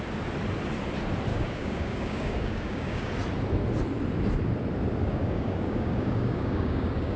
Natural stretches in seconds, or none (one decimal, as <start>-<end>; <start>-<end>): 0.0-1.3; 3.1-5.0